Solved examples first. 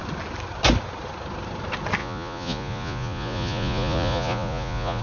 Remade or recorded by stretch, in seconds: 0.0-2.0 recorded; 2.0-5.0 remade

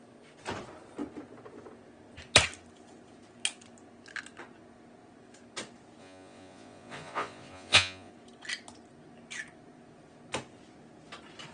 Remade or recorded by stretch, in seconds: 0.0-6.0 recorded; 6.0-8.1 remade; 8.1-11.5 recorded

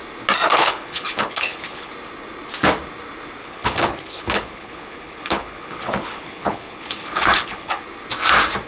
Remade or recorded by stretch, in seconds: 0.0-0.5 recorded; 0.5-1.9 remade; 1.9-3.4 recorded; 3.4-7.8 remade; 7.8-8.7 recorded

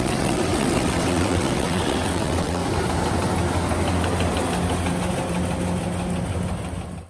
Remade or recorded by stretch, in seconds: 0.0-2.6 remade; 2.6-7.1 recorded

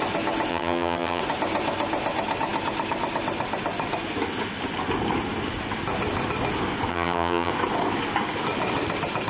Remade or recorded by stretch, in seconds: 0.0-0.5 recorded; 0.5-1.2 remade; 1.2-6.9 recorded; 6.9-7.5 remade; 7.5-9.3 recorded